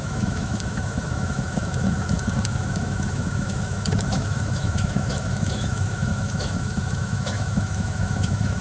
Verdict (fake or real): fake